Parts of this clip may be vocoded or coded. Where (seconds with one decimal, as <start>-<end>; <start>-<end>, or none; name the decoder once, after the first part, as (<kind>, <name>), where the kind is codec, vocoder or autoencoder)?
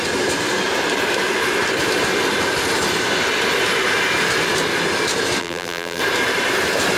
5.4-6.0 (vocoder, BigVGAN v2)